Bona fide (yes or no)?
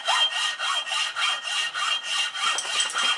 yes